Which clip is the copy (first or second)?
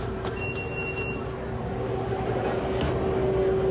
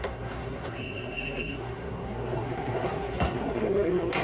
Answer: second